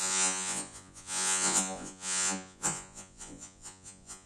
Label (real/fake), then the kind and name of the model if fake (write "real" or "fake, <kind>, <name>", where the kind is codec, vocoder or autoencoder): fake, vocoder, Vocos